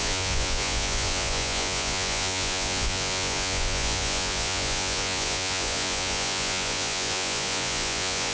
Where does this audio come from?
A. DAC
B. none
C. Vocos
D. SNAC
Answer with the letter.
C